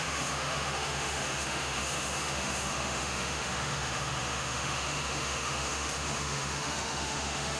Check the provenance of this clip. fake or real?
fake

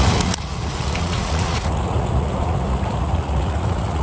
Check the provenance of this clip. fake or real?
fake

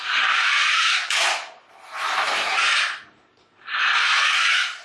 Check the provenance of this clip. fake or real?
real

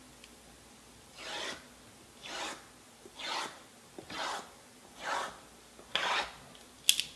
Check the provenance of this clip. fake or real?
real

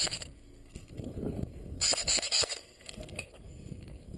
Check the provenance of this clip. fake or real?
fake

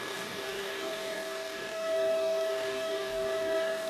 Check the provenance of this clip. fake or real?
fake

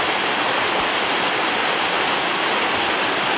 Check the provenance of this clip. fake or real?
real